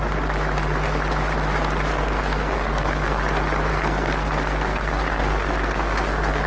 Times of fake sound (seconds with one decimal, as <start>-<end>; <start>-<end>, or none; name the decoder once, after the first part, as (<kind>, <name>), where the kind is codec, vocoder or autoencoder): 1.9-3.2 (codec, SNAC); 3.7-6.5